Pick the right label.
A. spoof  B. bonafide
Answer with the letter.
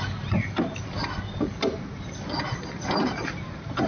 B